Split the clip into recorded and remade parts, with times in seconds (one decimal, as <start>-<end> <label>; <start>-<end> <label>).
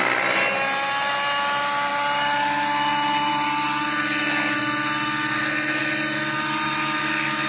0.0-7.5 recorded